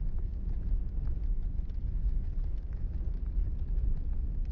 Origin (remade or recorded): recorded